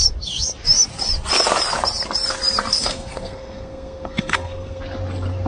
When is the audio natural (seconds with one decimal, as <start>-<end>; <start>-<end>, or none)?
0.0-2.7; 4.8-5.5